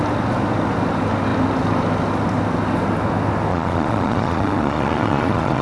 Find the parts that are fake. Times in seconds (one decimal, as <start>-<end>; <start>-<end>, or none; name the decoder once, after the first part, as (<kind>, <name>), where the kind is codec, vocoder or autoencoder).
3.5-5.6 (vocoder, Vocos)